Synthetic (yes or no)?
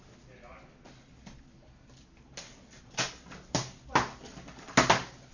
no